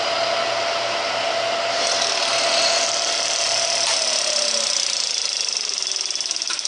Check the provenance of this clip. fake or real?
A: real